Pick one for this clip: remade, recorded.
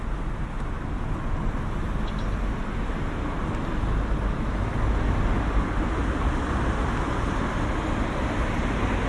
recorded